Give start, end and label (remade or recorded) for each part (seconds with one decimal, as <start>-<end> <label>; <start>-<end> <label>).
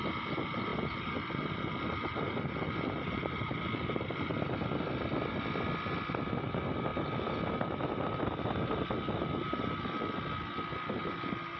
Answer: 0.0-0.7 recorded; 0.7-4.6 remade; 4.6-6.9 recorded; 6.9-7.5 remade; 7.5-11.6 recorded